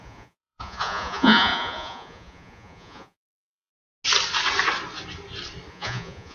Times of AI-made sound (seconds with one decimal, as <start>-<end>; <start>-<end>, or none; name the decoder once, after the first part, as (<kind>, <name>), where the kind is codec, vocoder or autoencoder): 0.0-3.7 (vocoder, Vocos); 5.7-6.3